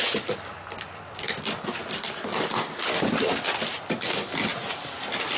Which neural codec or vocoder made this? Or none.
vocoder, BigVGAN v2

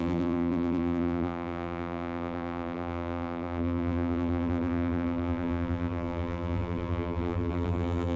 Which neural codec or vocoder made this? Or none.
vocoder, BigVGAN v2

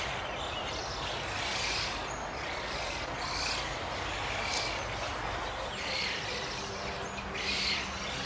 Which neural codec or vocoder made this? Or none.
none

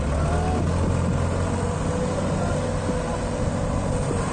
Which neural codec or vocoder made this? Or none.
none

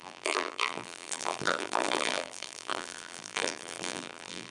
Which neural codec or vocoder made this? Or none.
vocoder, BigVGAN v2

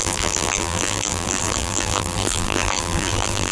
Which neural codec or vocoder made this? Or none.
vocoder, BigVGAN v2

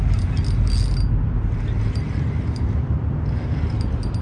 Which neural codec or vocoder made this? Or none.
none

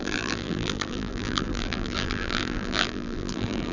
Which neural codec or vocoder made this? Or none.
vocoder, BigVGAN v2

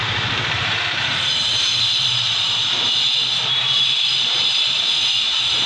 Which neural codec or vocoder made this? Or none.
vocoder, BigVGAN v2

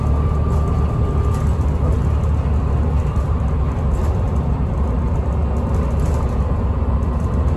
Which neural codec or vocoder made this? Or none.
none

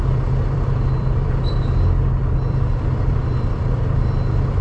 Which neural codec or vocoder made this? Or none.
vocoder, BigVGAN v2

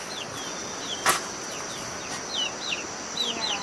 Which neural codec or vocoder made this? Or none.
none